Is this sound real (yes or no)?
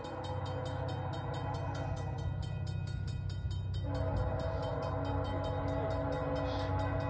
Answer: yes